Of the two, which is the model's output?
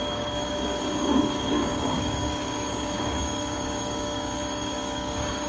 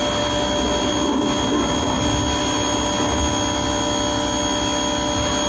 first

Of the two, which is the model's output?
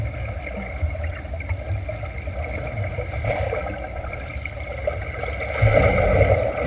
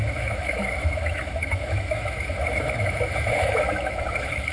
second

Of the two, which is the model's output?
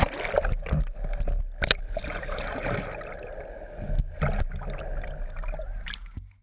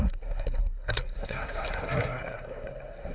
second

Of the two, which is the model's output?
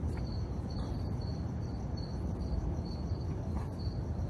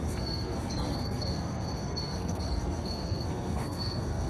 second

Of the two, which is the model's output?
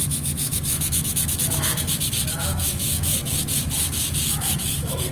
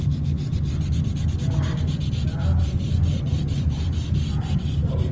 first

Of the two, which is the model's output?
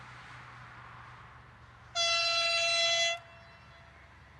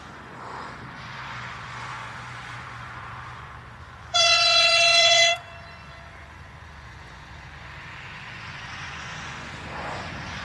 second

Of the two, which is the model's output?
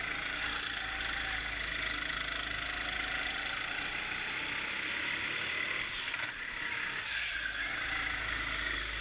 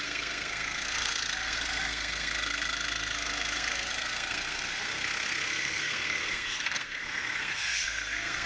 second